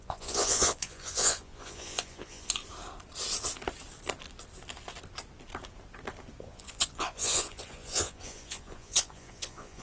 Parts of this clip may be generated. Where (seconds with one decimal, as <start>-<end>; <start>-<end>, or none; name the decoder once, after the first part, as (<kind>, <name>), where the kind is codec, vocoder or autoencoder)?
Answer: 0.0-2.6 (vocoder, Vocos); 6.4-9.8

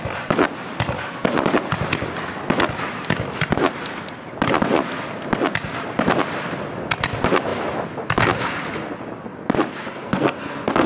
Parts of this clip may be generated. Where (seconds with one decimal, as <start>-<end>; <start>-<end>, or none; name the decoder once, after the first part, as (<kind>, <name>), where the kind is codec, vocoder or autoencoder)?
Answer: 9.9-10.9 (codec, SNAC)